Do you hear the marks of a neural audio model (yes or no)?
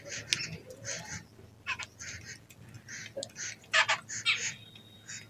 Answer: no